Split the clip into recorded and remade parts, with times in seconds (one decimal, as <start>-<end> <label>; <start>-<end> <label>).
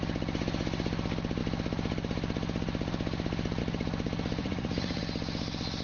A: 0.0-4.4 recorded; 4.4-5.0 remade; 5.0-5.8 recorded